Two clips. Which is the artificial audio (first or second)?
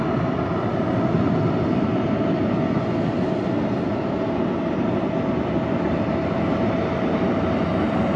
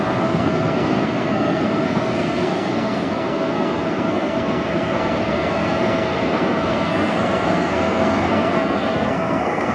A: second